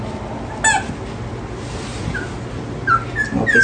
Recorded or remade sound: recorded